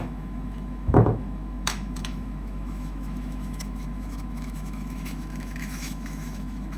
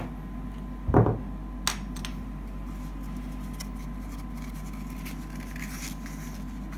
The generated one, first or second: first